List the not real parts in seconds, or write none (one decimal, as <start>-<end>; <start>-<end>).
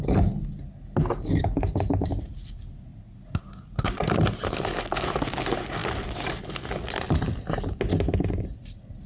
5.8-6.4